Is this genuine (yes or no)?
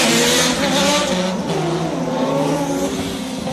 yes